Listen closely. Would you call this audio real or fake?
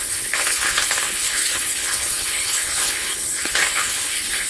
fake